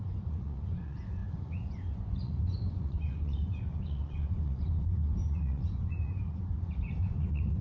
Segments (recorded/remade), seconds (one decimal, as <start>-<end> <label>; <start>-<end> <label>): 0.0-7.6 remade